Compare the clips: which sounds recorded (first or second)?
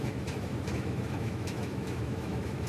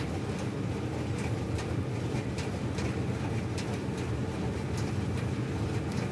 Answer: second